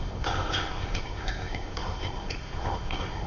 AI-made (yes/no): yes